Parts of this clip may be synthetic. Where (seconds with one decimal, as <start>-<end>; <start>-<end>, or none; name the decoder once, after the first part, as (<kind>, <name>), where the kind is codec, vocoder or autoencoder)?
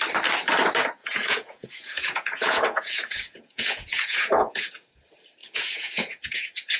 1.0-4.7 (vocoder, Vocos); 5.4-6.8